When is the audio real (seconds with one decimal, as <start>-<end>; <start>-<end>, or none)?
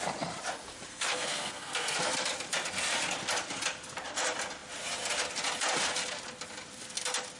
0.0-0.9; 2.0-7.4